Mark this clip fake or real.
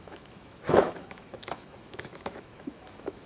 fake